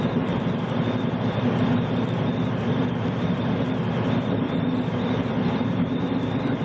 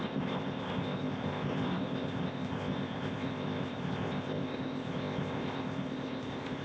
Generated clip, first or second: second